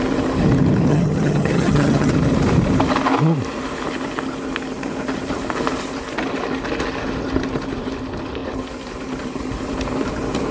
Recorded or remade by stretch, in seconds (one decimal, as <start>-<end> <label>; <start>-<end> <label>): 0.0-0.9 recorded; 0.9-2.1 remade; 2.1-10.5 recorded